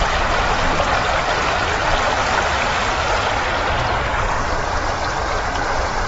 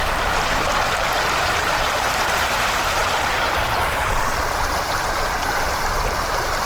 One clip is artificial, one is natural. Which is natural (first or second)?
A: first